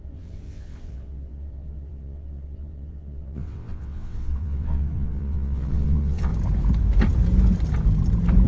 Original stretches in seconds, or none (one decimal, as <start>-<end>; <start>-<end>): 6.3-8.5